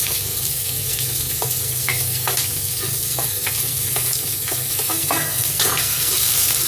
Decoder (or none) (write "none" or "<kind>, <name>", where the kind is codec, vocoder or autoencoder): codec, SNAC